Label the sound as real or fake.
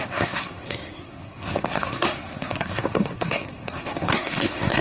fake